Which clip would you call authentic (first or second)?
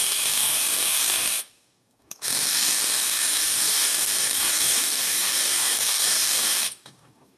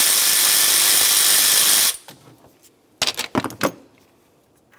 second